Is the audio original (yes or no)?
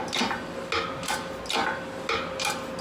yes